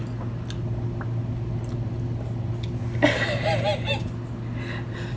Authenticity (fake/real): real